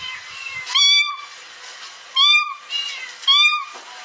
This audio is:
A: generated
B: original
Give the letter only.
B